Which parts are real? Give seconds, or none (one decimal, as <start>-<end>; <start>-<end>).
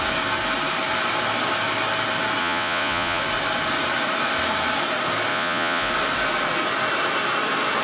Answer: 0.0-2.4; 3.2-5.3; 5.9-7.8